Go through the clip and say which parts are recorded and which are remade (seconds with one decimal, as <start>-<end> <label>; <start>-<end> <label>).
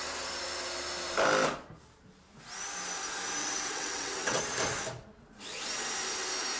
0.0-3.4 recorded; 3.4-4.4 remade; 4.4-6.6 recorded